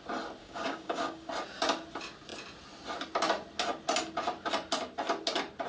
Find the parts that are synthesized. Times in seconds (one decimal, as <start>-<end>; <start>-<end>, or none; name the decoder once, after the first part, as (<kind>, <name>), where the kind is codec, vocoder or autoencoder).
0.4-1.3 (codec, DAC)